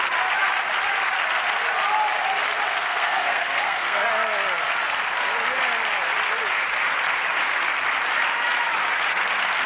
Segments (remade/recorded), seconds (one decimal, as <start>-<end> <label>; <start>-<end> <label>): 0.0-2.7 recorded; 2.7-4.1 remade; 4.1-9.7 recorded